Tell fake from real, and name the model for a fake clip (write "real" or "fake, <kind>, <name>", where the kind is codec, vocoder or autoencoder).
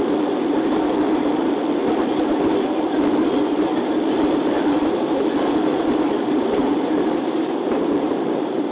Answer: fake, vocoder, BigVGAN v2